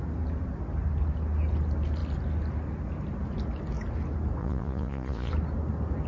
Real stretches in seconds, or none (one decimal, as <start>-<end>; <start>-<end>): 0.0-4.4; 5.3-6.1